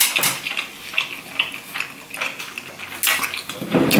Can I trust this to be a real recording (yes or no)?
yes